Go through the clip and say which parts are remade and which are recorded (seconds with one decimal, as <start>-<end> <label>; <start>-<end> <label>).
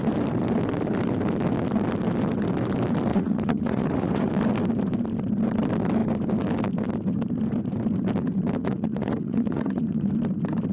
0.0-3.1 recorded; 3.1-4.3 remade; 4.3-8.6 recorded; 8.6-10.1 remade; 10.1-10.7 recorded